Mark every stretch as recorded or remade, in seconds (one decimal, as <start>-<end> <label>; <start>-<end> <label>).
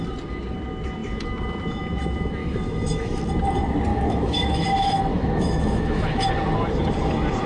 0.0-2.4 recorded; 2.4-3.2 remade; 3.2-3.9 recorded; 3.9-6.3 remade; 6.3-7.5 recorded